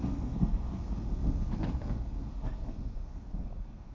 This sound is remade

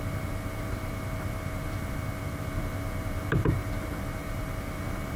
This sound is remade